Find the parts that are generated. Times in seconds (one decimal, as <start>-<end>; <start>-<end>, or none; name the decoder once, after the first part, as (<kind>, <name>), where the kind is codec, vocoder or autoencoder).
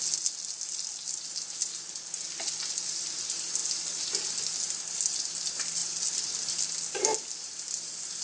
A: none